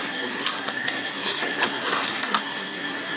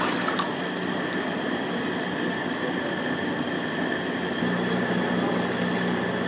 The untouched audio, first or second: second